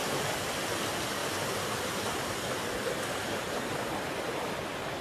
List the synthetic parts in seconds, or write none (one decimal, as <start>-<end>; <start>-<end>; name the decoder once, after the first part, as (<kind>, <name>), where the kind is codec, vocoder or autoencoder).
0.0-0.6 (vocoder, BigVGAN v2)